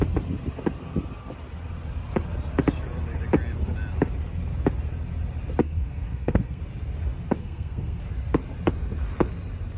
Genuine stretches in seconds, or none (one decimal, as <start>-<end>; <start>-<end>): 0.0-5.6; 6.6-7.4; 8.0-9.8